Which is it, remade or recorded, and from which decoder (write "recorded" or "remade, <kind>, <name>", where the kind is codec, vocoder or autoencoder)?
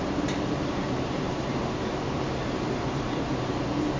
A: remade, vocoder, BigVGAN v2